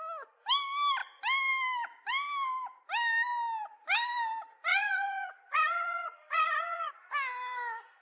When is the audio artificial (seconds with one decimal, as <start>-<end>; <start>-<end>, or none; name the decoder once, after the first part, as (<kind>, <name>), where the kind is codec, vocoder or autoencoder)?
4.7-6.9 (vocoder, Vocos)